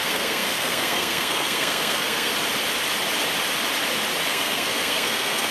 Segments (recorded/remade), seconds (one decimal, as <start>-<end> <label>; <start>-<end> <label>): 0.0-2.3 remade; 2.3-4.3 recorded; 4.3-5.5 remade